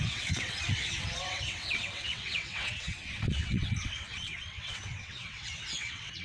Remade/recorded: remade